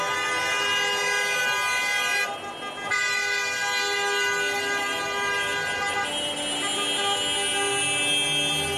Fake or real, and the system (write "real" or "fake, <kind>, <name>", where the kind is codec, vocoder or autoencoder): real